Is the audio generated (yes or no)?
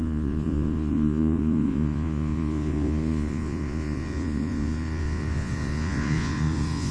yes